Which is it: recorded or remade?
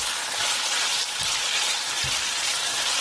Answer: remade